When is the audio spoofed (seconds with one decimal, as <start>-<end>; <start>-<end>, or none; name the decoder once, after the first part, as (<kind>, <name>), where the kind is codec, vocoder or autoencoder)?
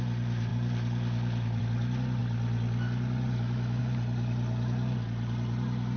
none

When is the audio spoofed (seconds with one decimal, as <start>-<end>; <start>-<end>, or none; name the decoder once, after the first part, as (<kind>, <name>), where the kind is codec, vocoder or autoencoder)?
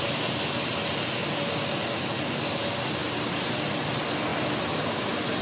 3.0-3.5 (vocoder, BigVGAN v2)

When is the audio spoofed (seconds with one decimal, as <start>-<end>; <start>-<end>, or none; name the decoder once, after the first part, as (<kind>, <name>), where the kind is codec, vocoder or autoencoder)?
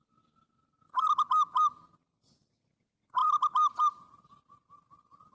none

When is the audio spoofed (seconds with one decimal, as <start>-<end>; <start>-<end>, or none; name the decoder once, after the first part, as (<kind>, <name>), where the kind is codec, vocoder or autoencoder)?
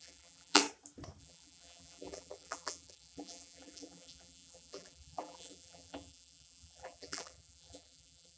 0.0-0.6 (vocoder, BigVGAN v2); 1.2-8.4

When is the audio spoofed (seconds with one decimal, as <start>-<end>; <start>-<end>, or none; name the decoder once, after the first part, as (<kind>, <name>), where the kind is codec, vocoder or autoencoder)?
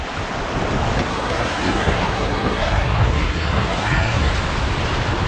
1.1-4.3 (codec, SNAC)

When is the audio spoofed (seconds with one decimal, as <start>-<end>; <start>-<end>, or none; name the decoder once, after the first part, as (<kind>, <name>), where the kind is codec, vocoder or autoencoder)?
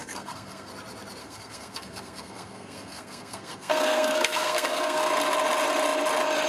0.0-0.7 (codec, SNAC); 1.2-5.1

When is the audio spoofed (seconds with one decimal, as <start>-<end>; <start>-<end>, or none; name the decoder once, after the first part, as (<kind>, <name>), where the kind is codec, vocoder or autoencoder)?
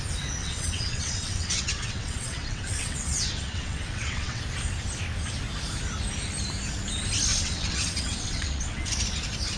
0.4-4.4 (vocoder, WaveNeXt); 7.3-8.9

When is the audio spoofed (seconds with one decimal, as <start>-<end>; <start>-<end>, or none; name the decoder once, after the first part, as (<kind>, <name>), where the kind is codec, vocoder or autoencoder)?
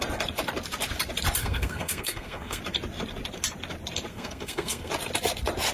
1.4-2.6 (codec, SNAC); 4.1-4.9